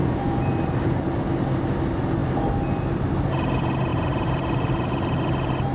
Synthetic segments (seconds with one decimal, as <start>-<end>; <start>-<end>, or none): 0.0-1.2; 3.9-4.9